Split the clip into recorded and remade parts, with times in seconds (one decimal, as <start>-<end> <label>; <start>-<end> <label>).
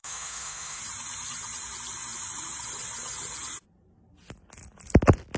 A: 0.0-0.8 remade; 0.8-5.4 recorded